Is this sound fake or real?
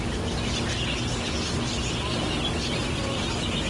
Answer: real